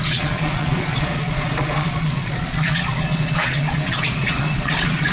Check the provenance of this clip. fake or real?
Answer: fake